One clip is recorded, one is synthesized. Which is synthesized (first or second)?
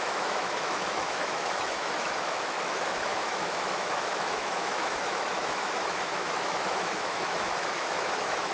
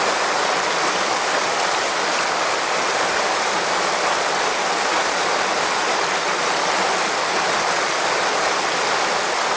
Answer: first